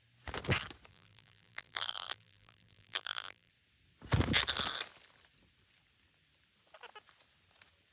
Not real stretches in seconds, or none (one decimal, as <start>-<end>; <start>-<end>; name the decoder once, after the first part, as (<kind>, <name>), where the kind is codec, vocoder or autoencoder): 0.9-3.5 (vocoder, BigVGAN v2)